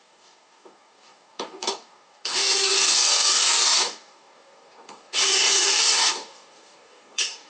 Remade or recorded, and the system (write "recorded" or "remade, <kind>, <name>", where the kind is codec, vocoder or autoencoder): remade, codec, DAC